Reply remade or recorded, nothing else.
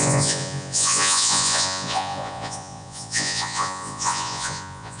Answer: remade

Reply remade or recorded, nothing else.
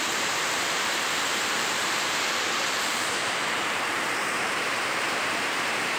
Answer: remade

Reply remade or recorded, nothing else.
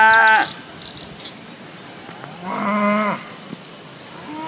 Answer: recorded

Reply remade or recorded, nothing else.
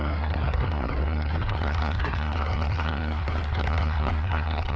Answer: remade